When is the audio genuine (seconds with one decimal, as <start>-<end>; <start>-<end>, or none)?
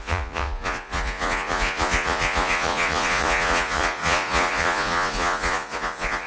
none